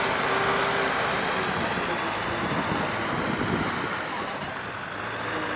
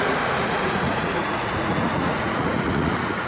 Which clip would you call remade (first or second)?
second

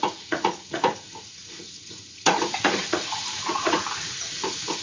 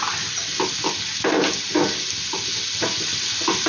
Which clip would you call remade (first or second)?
first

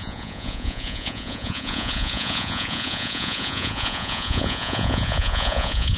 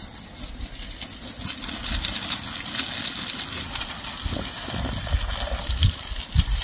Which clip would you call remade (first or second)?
first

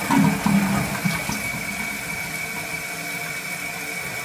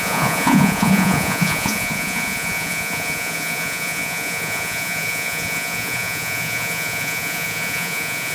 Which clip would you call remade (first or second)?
second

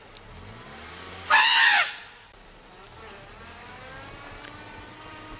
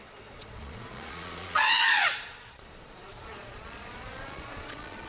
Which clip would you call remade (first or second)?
second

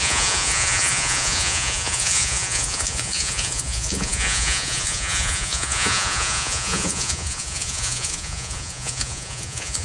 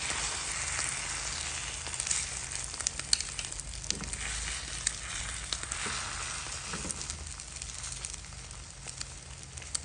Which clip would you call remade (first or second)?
first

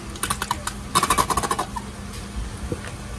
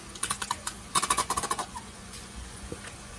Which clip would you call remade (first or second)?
second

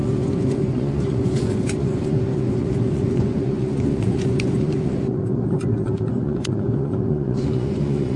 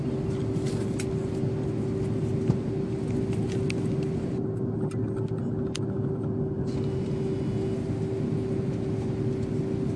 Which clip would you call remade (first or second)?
first